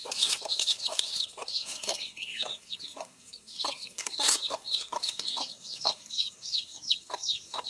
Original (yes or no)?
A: no